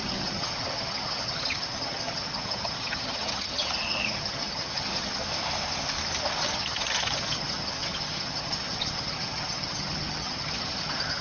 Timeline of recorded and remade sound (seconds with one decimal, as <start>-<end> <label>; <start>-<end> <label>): 0.0-5.2 remade; 5.2-6.4 recorded; 6.4-11.2 remade